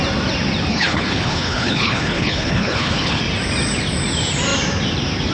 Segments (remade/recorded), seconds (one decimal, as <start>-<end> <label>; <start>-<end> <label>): 0.0-0.7 recorded; 0.7-3.2 remade; 3.2-5.3 recorded